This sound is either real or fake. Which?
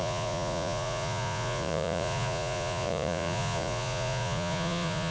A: fake